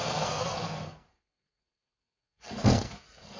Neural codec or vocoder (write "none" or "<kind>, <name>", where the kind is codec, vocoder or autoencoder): codec, SNAC